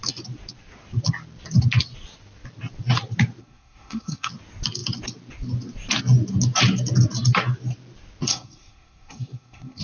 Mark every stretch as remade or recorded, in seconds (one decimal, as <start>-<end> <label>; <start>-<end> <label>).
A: 0.0-3.4 recorded; 3.4-4.3 remade; 4.3-8.3 recorded; 8.3-9.8 remade